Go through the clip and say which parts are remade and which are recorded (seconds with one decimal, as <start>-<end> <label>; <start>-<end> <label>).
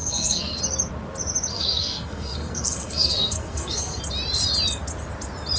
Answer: 0.0-0.6 remade; 0.6-1.5 recorded; 1.5-4.0 remade; 4.0-5.6 recorded